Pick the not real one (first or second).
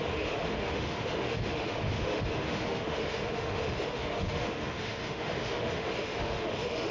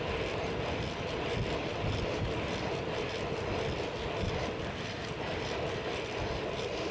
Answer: first